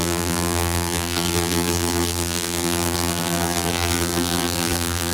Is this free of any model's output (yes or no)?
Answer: no